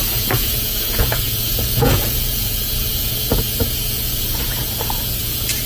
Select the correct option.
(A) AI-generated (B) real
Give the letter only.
A